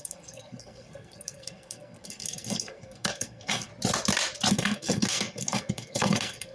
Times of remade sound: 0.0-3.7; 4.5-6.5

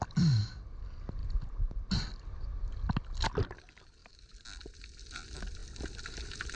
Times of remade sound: none